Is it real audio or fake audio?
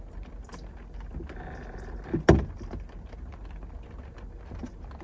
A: real